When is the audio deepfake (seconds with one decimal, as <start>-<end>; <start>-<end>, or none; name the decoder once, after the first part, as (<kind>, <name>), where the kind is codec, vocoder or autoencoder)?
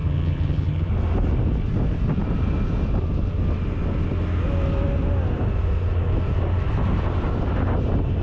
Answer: 0.0-0.9 (vocoder, HiFi-GAN)